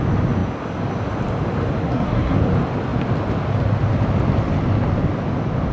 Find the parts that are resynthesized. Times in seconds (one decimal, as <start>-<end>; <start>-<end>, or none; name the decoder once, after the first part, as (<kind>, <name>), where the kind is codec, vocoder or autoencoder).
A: 1.8-2.4 (codec, SNAC)